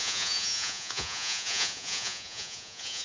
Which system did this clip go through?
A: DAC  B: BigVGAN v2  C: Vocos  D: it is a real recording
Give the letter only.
C